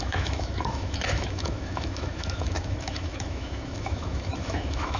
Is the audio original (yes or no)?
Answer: no